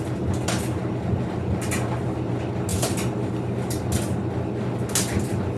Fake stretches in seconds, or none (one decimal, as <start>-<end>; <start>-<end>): none